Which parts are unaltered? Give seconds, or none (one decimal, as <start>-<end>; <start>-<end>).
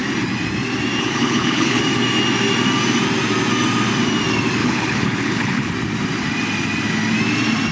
0.0-1.0; 1.8-4.6; 5.7-7.7